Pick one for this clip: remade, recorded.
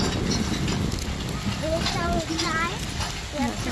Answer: recorded